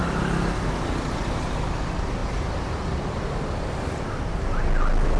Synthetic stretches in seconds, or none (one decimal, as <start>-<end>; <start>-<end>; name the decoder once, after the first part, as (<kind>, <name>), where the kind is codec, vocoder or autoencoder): none